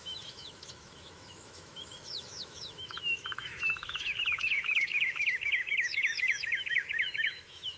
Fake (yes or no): yes